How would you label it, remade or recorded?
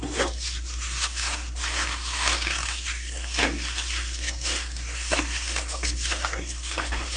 remade